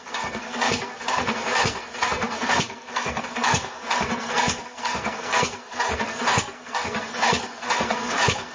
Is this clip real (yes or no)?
no